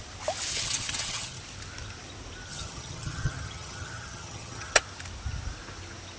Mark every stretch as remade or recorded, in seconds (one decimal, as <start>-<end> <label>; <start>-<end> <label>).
0.0-0.5 recorded; 0.5-1.4 remade; 1.4-2.5 recorded; 2.5-4.8 remade; 4.8-6.2 recorded